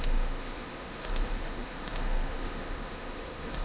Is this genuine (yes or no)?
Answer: no